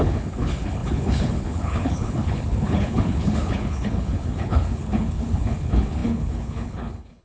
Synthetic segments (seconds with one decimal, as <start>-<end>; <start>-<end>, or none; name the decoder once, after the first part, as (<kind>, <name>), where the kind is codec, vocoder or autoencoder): 0.0-7.2 (codec, HILCodec)